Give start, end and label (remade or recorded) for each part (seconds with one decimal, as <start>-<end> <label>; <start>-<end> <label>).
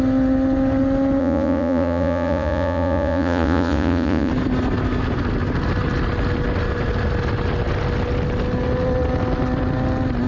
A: 0.0-1.2 recorded; 1.2-4.3 remade; 4.3-10.3 recorded